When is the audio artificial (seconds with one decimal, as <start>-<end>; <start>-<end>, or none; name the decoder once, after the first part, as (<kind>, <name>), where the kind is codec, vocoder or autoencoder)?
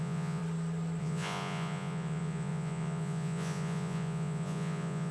0.0-0.4 (vocoder, Vocos); 1.0-5.1